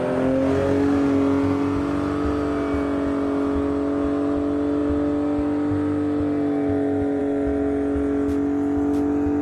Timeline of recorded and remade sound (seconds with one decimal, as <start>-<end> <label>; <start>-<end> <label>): 0.0-9.4 recorded